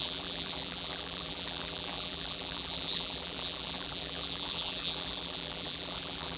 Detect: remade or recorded remade